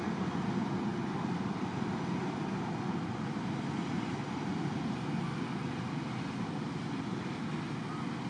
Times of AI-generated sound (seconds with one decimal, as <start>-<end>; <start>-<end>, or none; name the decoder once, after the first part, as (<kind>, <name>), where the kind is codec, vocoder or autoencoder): none